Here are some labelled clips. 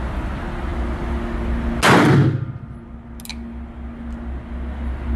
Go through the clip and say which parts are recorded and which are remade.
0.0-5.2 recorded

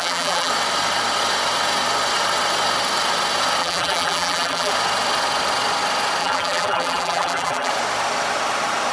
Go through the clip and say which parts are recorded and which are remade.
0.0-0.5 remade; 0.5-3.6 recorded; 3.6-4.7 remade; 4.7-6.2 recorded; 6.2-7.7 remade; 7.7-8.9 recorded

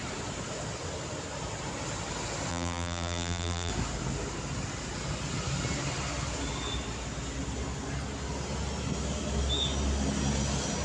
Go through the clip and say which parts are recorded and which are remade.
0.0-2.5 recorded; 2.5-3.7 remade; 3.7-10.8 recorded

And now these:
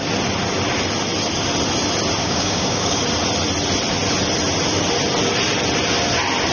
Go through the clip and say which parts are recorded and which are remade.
0.0-2.2 recorded; 2.2-3.0 remade; 3.0-6.5 recorded